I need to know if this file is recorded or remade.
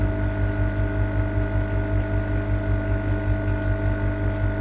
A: recorded